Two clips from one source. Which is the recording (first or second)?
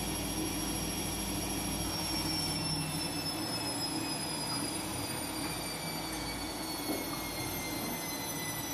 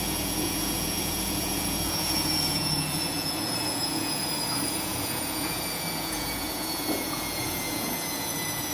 first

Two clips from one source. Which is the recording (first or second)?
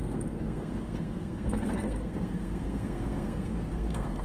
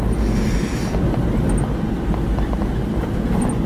second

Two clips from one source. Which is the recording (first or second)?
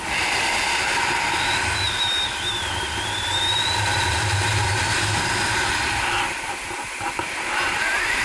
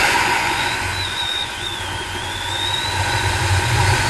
first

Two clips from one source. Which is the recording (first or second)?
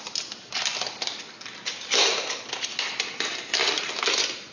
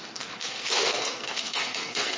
first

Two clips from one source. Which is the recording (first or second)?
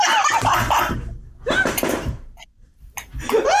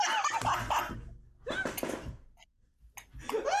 second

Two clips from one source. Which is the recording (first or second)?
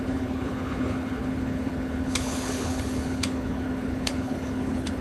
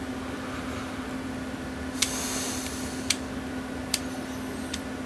second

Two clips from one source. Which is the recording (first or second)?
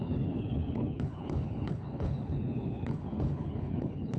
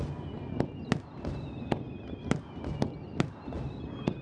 second